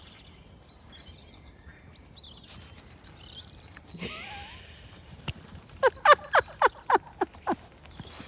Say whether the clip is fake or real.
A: real